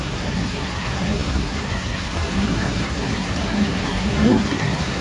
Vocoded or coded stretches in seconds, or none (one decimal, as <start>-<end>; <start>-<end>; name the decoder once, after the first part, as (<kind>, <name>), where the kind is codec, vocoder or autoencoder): 0.0-5.0 (codec, SNAC)